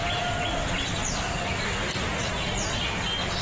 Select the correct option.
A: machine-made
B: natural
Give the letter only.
B